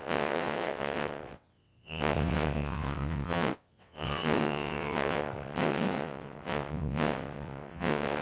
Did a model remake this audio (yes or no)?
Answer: yes